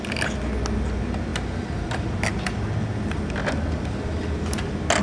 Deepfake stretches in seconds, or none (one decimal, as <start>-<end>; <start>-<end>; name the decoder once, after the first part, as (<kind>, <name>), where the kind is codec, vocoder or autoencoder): none